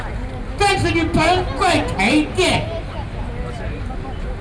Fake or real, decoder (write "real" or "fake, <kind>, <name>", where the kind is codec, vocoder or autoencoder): real